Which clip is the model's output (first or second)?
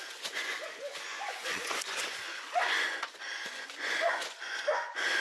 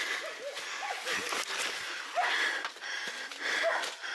first